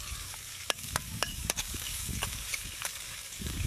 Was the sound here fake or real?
fake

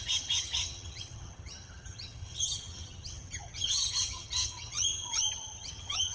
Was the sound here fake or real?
fake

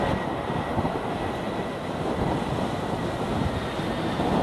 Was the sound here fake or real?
real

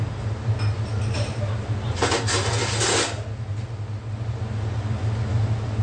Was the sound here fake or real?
real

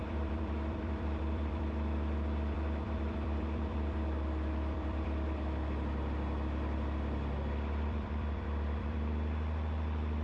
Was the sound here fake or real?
fake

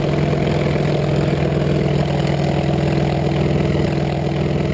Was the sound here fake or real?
real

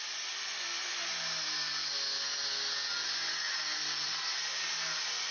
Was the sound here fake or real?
real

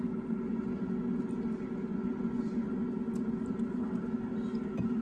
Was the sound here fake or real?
real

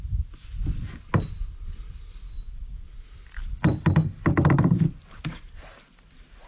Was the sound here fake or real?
real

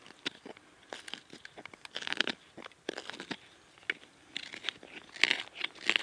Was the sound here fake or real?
real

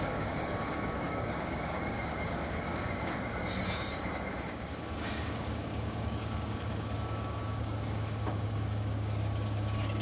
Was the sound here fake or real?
fake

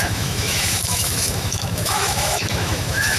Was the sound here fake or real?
fake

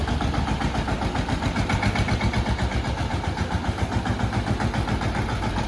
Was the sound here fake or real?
real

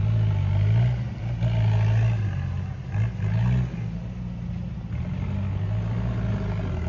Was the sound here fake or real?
real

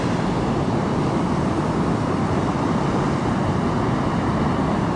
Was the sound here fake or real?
real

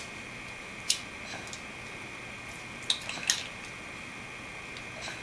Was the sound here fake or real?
real